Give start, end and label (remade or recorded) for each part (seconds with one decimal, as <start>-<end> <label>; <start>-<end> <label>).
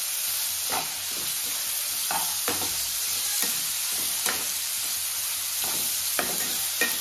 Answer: 0.0-1.9 recorded; 1.9-2.7 remade; 2.7-7.0 recorded